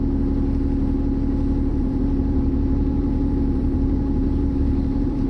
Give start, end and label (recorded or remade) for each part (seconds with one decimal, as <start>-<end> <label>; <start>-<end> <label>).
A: 0.0-1.7 recorded; 1.7-5.3 remade